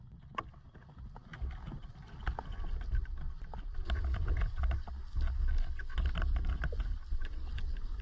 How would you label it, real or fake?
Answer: real